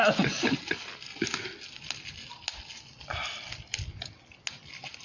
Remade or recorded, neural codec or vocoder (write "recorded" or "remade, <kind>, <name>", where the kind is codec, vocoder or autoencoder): recorded